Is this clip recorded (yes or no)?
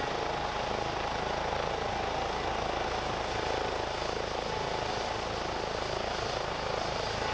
yes